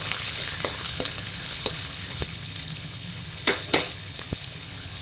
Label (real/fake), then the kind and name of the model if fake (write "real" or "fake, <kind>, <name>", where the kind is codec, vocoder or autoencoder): fake, codec, HILCodec